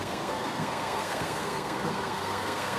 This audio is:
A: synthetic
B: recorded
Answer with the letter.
A